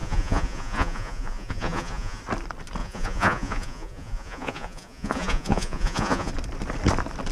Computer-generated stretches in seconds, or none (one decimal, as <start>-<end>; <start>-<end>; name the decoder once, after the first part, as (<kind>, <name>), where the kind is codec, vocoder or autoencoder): 0.0-2.2 (vocoder, Vocos); 2.8-6.3